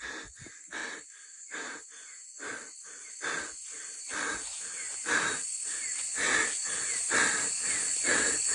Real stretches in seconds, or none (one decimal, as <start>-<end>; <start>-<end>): 0.0-8.5